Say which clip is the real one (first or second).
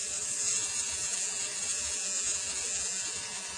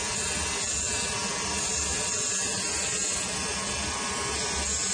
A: second